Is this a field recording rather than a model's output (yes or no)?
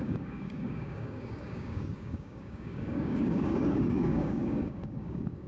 no